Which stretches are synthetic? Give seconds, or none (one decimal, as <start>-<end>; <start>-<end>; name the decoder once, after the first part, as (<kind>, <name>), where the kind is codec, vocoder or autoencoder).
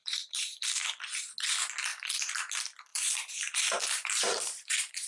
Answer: 0.0-0.7 (vocoder, BigVGAN v2); 1.9-2.4; 2.9-5.1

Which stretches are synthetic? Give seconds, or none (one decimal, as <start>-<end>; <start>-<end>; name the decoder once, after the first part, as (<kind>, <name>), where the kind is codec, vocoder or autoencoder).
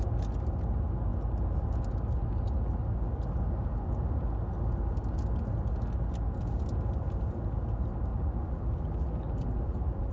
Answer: 8.1-10.1 (vocoder, BigVGAN v2)